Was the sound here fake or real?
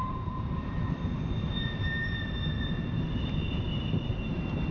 fake